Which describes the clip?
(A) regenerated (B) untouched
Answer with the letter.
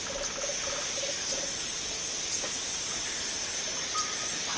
B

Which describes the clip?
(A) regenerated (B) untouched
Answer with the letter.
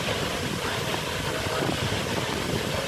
B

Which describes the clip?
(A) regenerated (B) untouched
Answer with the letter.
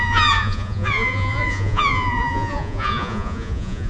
A